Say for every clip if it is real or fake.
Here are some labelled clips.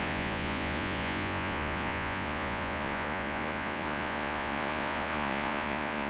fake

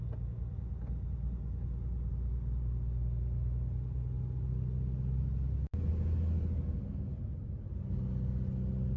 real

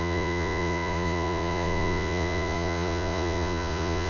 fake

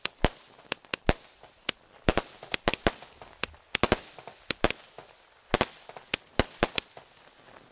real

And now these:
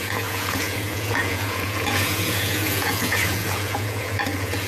fake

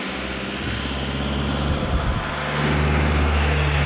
real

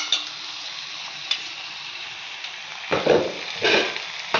real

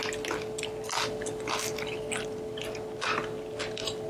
real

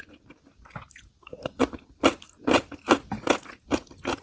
real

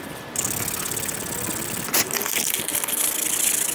real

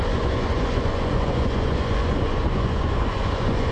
fake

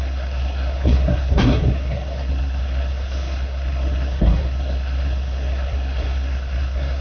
fake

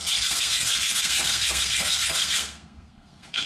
fake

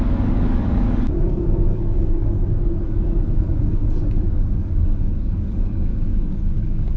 fake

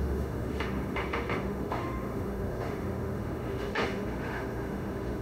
fake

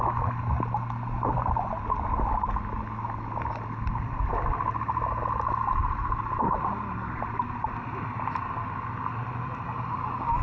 real